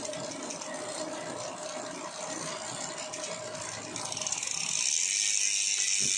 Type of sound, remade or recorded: recorded